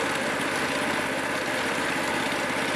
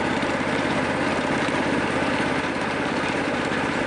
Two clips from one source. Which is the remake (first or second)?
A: second